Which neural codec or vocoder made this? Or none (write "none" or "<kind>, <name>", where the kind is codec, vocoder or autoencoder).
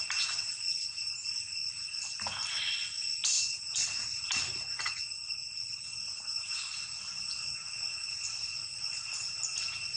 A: none